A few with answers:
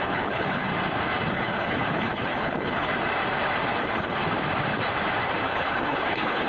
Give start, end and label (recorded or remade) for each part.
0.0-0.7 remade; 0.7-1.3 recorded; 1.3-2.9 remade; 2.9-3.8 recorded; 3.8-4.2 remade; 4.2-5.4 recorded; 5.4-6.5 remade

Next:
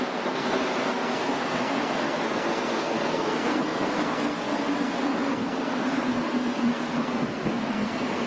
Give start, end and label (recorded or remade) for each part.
0.0-8.3 remade

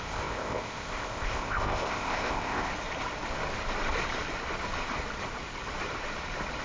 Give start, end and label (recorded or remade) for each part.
0.0-2.7 remade; 2.7-6.6 recorded

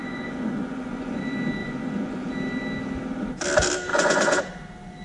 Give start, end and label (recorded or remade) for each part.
0.0-1.2 remade; 1.2-1.6 recorded; 1.6-2.3 remade; 2.3-3.9 recorded; 3.9-4.4 remade; 4.4-5.0 recorded

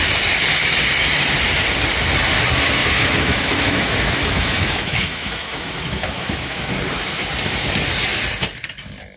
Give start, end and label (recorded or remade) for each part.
0.0-2.8 recorded; 2.8-6.7 remade; 6.7-9.2 recorded

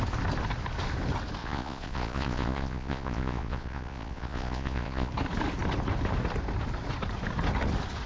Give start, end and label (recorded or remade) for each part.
0.0-1.4 recorded; 1.4-5.1 remade; 5.1-8.1 recorded